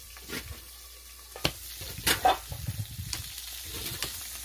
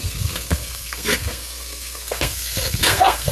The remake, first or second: second